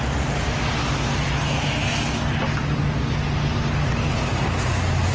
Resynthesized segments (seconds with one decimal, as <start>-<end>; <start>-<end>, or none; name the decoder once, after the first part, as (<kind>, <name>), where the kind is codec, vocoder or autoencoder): none